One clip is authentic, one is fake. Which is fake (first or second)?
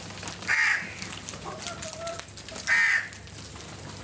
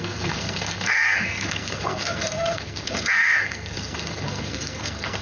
second